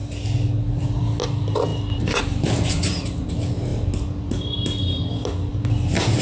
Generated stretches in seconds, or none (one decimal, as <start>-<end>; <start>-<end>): 1.7-3.3